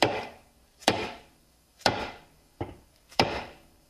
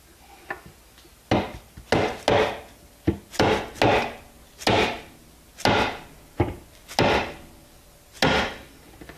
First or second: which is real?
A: second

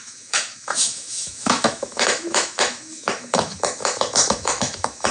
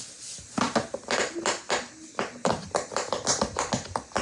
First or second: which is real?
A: second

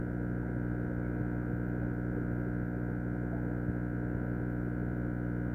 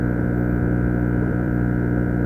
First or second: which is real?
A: first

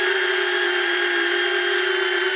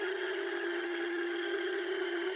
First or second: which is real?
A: first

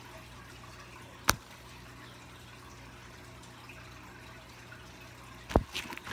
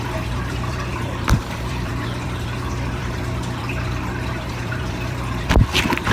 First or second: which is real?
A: first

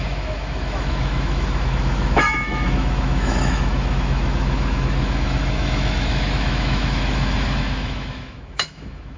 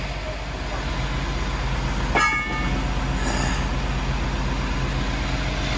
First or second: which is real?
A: second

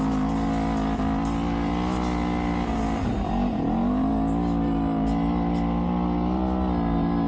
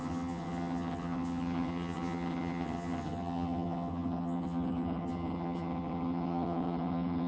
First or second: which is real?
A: first